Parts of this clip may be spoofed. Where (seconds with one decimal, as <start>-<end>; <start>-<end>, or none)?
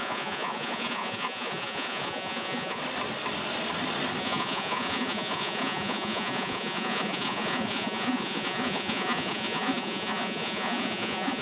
0.0-2.8; 4.2-11.4